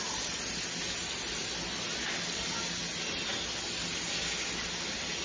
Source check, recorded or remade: recorded